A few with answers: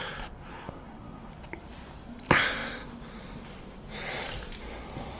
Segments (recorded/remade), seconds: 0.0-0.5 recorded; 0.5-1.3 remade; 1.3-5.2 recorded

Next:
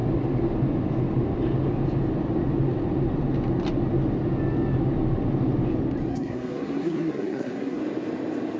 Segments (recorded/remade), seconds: 0.0-6.1 recorded; 6.1-7.8 remade; 7.8-8.6 recorded

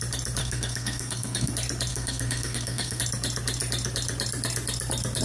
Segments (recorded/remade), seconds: 0.0-0.4 recorded; 0.4-1.5 remade; 1.5-1.9 recorded; 1.9-3.0 remade; 3.0-5.2 recorded

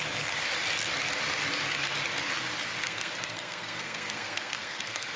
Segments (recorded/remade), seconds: 0.0-2.8 recorded; 2.8-5.2 remade

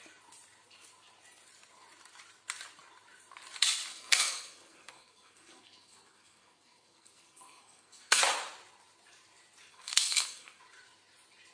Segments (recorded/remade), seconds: 0.0-3.9 recorded; 3.9-8.2 remade; 8.2-9.7 recorded; 9.7-10.6 remade; 10.6-11.5 recorded

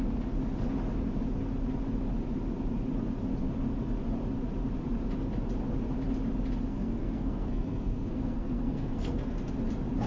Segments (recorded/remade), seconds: 0.0-6.7 recorded; 6.7-9.5 remade; 9.5-10.1 recorded